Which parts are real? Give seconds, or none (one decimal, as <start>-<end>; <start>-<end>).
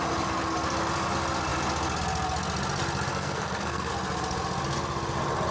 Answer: 0.0-3.1; 3.9-5.5